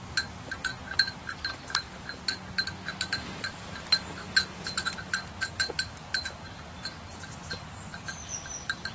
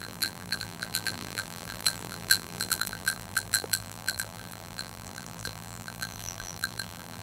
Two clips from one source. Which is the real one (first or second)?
first